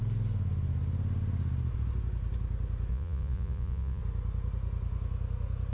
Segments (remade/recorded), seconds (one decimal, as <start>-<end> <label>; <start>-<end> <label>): 0.0-2.9 recorded; 2.9-4.0 remade; 4.0-5.7 recorded